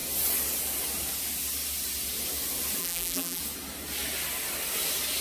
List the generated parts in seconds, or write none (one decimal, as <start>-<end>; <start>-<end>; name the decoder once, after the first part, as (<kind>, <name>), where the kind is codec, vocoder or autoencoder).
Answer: 2.8-3.4 (vocoder, BigVGAN v2)